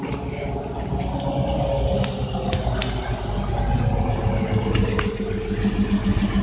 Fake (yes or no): no